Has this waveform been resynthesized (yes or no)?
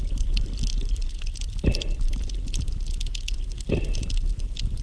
no